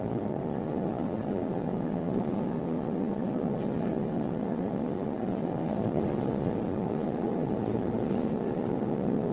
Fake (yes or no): yes